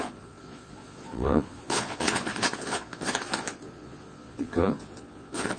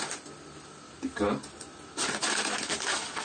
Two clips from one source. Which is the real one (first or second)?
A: second